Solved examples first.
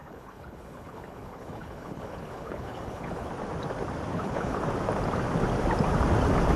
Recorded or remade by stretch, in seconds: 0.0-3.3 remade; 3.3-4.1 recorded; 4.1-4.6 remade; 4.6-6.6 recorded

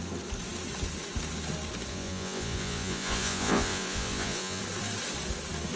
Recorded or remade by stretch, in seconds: 0.0-1.9 recorded; 1.9-4.6 remade; 4.6-5.8 recorded

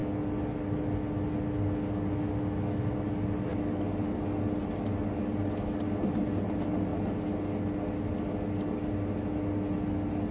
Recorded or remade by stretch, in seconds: 0.0-10.3 recorded

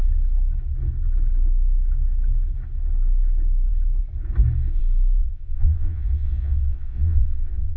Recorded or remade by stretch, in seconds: 0.0-5.2 recorded; 5.2-7.8 remade

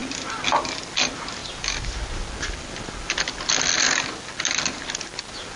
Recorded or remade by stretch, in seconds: 0.0-5.6 recorded

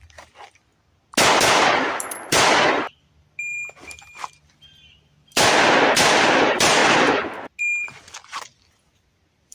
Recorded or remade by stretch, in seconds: 0.0-0.7 remade; 0.7-1.3 recorded; 1.3-6.8 remade; 6.8-7.6 recorded; 7.6-9.5 remade